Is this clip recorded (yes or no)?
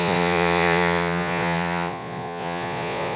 no